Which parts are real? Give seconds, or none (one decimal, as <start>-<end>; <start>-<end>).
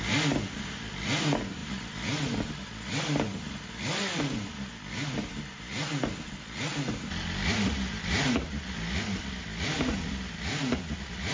0.0-11.3